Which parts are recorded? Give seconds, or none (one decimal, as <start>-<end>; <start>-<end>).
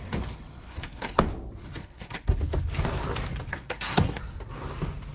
0.0-0.7; 1.2-1.8; 2.4-3.5; 4.2-5.1